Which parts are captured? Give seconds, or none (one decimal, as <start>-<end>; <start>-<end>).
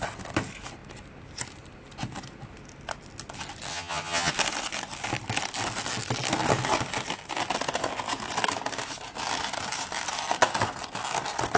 0.0-3.7; 4.3-11.6